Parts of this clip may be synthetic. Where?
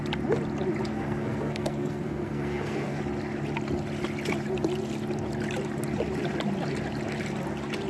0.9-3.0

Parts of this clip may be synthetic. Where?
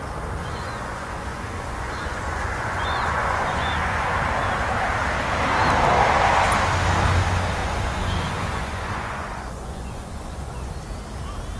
0.4-4.1; 7.6-10.7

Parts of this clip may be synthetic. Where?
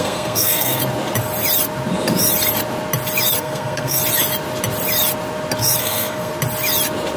0.0-0.8; 3.4-4.0; 5.8-6.3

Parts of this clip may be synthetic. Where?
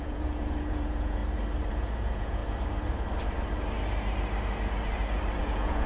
0.0-1.2; 1.7-2.4; 5.4-5.9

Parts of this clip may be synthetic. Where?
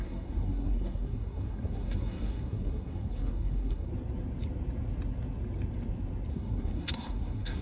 0.0-3.9; 6.3-7.6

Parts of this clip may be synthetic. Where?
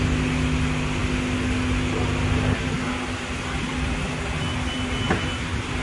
none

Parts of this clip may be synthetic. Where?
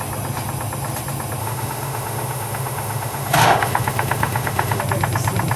1.4-4.8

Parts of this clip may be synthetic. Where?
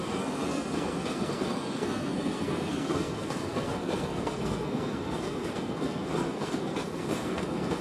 0.0-7.8